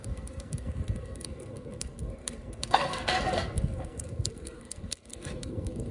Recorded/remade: remade